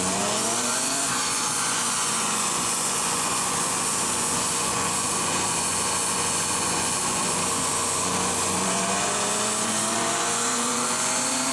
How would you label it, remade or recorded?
remade